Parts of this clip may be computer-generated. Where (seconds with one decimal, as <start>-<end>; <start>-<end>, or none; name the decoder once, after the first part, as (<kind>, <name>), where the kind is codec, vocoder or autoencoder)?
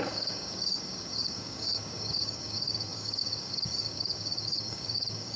0.0-5.4 (codec, DAC)